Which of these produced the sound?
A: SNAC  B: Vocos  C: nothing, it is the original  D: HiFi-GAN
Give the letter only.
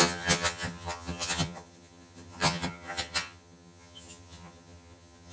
D